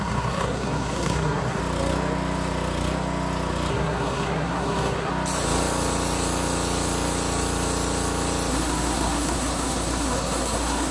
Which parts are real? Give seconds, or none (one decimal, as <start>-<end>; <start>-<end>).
1.6-3.7; 5.1-8.5